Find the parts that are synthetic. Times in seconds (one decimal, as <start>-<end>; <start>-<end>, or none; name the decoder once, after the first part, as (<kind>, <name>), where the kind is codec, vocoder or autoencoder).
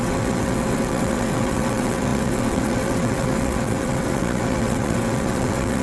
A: 0.0-5.8 (vocoder, WaveNeXt)